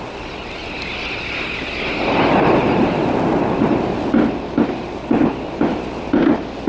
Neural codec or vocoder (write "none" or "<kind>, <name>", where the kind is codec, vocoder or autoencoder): none